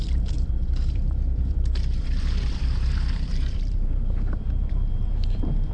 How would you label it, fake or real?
fake